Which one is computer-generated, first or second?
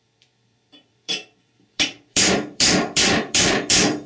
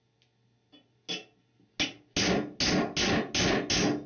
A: first